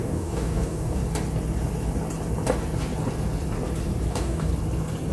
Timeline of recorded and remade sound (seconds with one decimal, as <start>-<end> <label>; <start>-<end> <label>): 0.0-1.0 remade; 1.0-4.1 recorded; 4.1-4.5 remade; 4.5-5.1 recorded